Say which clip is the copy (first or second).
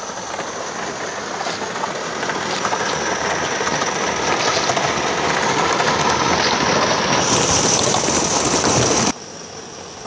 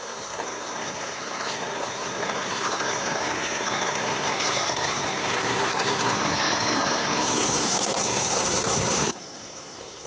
second